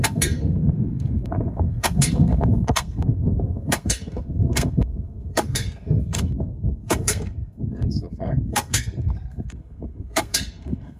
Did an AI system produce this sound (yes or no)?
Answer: yes